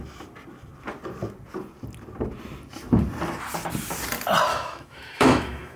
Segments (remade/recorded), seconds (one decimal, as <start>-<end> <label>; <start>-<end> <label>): 0.0-4.5 recorded; 4.5-5.8 remade